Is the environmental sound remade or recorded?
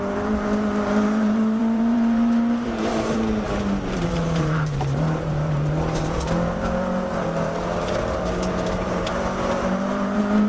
remade